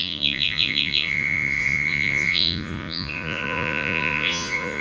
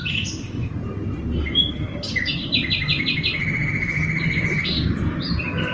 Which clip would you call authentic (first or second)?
second